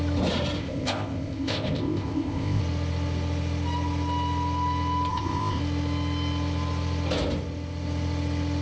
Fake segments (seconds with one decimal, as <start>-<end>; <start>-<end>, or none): 0.6-2.6; 5.1-5.6